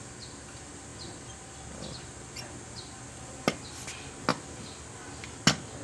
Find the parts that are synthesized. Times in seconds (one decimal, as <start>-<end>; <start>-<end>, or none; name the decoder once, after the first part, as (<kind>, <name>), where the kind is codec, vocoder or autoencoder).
none